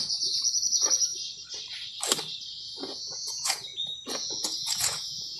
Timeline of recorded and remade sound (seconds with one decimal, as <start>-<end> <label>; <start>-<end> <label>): 0.0-1.1 remade; 1.1-2.6 recorded; 2.6-5.4 remade